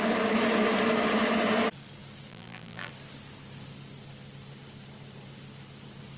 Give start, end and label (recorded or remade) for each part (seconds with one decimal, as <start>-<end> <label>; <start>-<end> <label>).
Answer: 0.0-2.3 recorded; 2.3-2.9 remade; 2.9-6.2 recorded

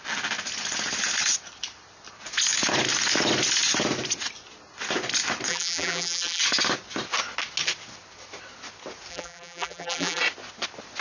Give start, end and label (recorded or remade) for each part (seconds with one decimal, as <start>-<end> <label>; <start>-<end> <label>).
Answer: 0.0-5.5 recorded; 5.5-6.4 remade; 6.4-9.1 recorded; 9.1-10.2 remade; 10.2-11.0 recorded

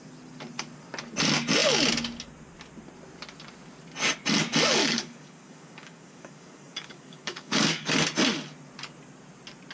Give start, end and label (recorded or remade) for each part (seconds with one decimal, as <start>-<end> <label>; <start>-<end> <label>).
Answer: 0.0-4.8 recorded; 4.8-7.9 remade; 7.9-9.7 recorded

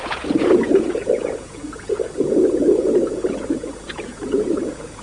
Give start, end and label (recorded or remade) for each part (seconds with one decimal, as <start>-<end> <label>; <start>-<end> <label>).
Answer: 0.0-5.0 remade